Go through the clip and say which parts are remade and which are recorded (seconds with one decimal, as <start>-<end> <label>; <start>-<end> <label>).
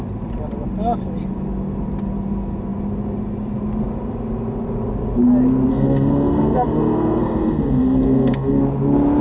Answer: 0.0-5.7 recorded; 5.7-8.6 remade; 8.6-9.2 recorded